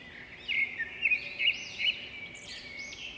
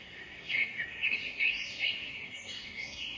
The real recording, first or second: first